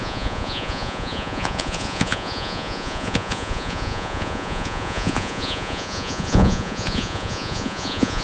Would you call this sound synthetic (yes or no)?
yes